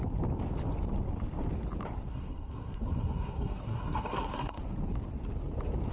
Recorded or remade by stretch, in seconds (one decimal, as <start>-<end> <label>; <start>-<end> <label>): 0.0-2.1 recorded; 2.1-4.6 remade; 4.6-5.9 recorded